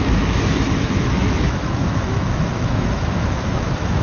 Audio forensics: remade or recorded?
remade